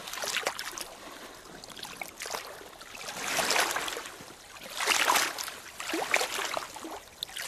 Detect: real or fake real